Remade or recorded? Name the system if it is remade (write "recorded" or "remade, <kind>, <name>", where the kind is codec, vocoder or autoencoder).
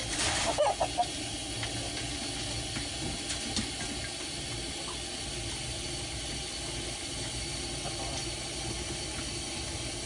recorded